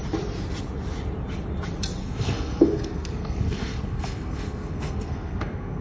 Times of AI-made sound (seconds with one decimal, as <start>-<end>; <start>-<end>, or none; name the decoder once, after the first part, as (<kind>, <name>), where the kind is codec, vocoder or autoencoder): 2.0-5.8 (codec, SNAC)